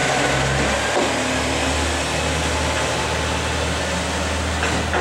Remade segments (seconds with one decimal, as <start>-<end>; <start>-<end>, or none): none